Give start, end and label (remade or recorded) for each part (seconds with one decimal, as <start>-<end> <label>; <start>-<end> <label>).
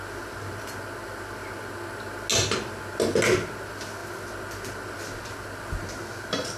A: 0.0-6.6 recorded